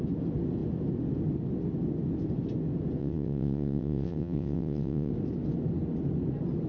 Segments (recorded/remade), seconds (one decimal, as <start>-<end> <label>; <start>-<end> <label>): 0.0-3.0 recorded; 3.0-5.1 remade; 5.1-6.7 recorded